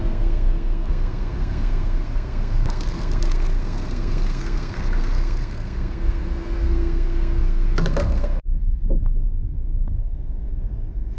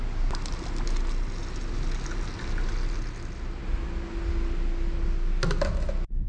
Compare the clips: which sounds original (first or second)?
second